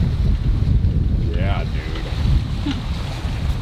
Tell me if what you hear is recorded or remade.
recorded